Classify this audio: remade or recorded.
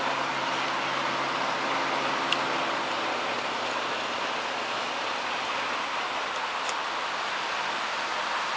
recorded